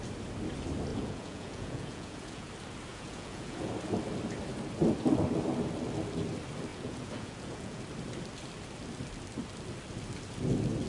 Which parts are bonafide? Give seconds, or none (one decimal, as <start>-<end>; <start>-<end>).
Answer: 0.0-0.9; 2.5-2.9; 3.7-6.7; 7.8-10.9

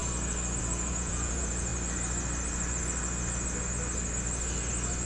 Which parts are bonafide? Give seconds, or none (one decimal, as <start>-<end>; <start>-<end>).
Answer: 0.0-0.6; 1.7-5.1

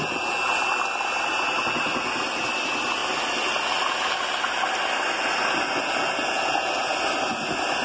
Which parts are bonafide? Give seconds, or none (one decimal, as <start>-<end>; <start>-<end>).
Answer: 0.0-7.8

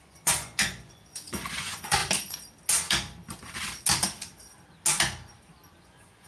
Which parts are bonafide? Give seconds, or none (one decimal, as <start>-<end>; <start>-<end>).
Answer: 2.0-5.8

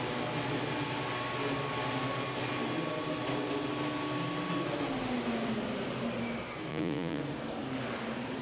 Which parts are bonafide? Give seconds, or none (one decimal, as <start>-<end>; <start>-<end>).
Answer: 0.0-6.7; 7.2-8.4

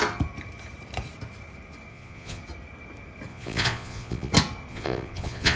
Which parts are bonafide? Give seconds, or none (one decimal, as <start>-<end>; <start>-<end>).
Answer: 0.0-1.9; 2.4-3.3; 4.3-4.7

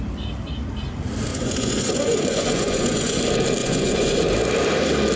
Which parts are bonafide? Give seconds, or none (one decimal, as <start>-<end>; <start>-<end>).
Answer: 0.0-1.3; 3.2-3.6; 4.2-5.2